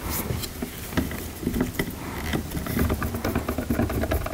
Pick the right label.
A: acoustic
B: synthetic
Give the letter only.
A